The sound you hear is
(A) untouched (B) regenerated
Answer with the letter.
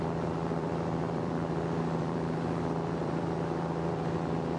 B